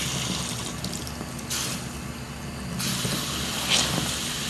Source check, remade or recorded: recorded